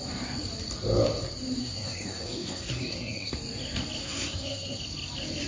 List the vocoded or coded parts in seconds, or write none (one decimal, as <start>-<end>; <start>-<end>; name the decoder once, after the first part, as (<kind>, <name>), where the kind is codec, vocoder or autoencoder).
1.6-3.3 (codec, SNAC); 4.0-4.8